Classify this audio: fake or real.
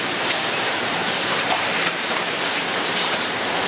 fake